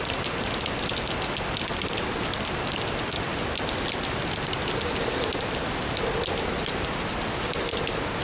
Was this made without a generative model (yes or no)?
yes